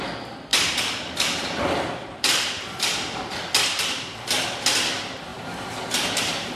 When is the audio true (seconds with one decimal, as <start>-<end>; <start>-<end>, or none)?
0.0-2.0; 3.3-5.3

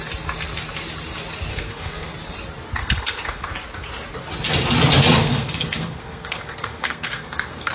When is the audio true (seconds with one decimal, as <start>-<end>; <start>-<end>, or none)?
0.0-1.5; 2.1-2.8; 3.5-5.2

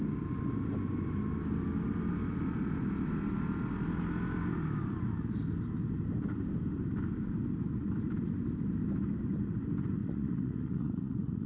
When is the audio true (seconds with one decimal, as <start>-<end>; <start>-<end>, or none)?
0.0-10.0

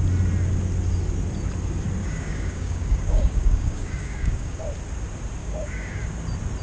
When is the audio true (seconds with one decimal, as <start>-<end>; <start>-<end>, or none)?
0.0-2.0; 4.6-5.4; 6.0-6.6

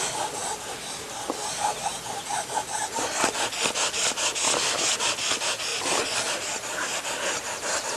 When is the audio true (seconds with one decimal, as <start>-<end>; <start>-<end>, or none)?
0.0-8.0

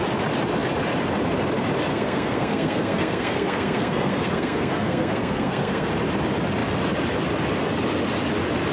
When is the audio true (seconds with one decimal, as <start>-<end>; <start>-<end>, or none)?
0.0-1.9; 5.9-8.7

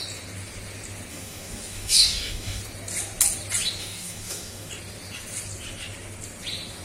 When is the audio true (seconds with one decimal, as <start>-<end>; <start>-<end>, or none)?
0.0-1.1; 2.6-3.8; 4.7-6.8

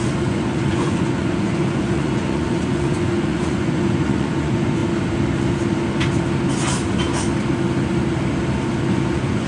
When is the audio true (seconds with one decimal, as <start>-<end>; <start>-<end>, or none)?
4.8-8.9